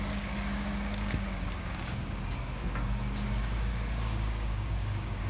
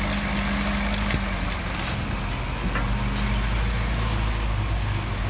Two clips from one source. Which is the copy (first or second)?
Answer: first